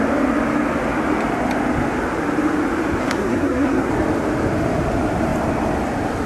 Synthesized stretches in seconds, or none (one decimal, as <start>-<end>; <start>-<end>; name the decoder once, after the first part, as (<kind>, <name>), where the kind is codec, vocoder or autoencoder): 3.0-3.9 (codec, SNAC)